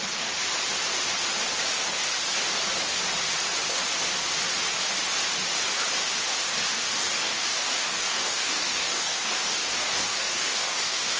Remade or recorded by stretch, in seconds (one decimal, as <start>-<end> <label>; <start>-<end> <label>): 0.0-6.7 recorded; 6.7-11.2 remade